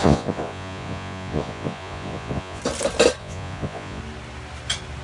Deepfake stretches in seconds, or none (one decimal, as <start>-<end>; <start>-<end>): 0.0-2.6; 3.2-4.0